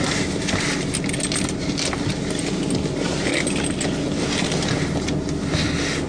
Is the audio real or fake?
real